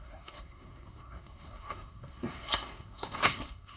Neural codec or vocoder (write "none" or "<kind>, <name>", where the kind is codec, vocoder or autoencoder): codec, SNAC